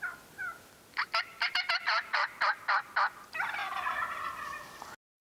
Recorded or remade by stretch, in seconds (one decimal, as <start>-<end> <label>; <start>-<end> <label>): 0.0-5.2 recorded